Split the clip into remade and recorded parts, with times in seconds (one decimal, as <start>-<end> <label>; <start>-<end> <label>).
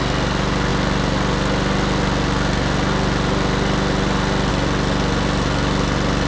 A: 0.0-6.3 recorded